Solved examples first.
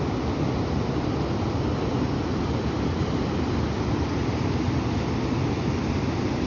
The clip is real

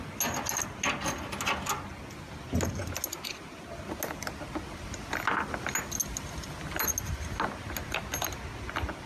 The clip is real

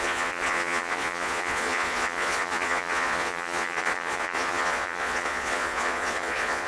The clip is fake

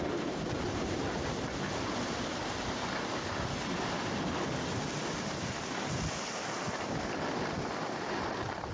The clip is real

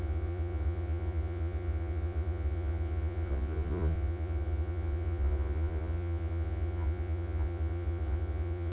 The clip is fake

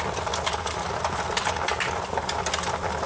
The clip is real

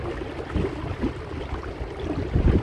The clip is real